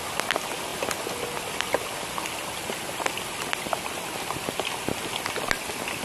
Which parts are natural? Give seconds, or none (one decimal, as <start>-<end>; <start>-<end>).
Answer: 0.0-6.0